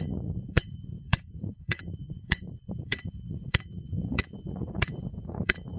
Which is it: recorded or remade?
remade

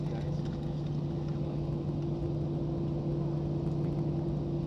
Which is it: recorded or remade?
recorded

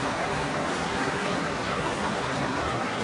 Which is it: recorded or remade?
remade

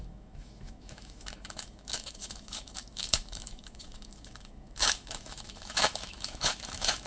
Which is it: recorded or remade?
remade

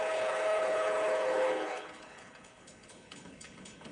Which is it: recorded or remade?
remade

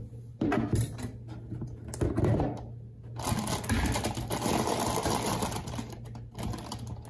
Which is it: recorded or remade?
recorded